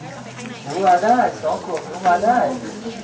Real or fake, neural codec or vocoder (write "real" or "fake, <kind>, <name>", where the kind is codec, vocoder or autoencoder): real